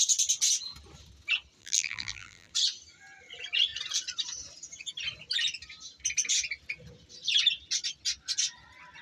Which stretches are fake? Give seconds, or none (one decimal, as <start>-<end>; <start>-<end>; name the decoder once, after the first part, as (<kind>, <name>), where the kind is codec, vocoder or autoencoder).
1.6-2.5 (vocoder, BigVGAN v2)